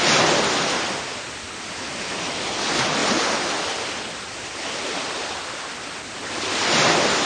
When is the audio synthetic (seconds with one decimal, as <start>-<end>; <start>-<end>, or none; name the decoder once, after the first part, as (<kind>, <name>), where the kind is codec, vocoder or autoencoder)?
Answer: none